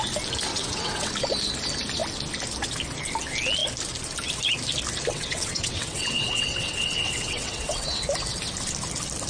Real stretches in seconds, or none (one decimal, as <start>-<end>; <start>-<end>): 0.0-0.5; 1.1-5.1; 8.0-9.3